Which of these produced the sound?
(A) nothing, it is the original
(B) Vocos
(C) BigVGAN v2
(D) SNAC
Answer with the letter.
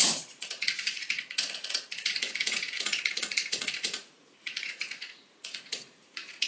B